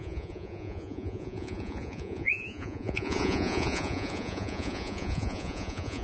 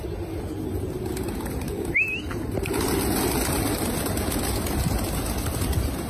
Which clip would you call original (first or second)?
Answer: second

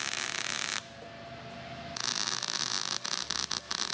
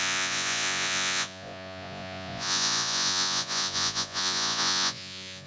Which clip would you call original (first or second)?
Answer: first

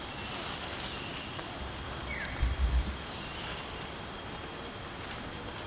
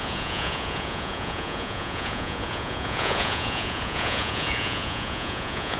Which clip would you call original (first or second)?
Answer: first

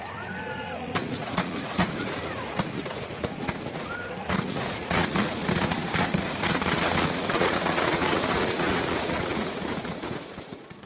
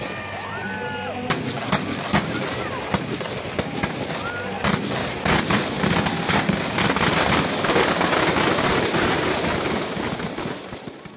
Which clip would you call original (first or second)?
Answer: second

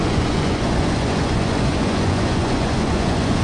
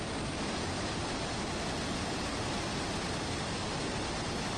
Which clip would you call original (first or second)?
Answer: second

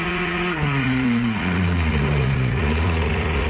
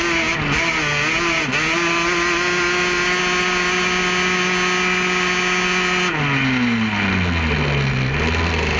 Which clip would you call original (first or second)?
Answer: second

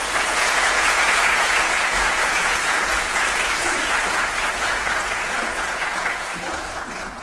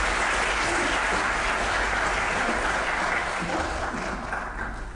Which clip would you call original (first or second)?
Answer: second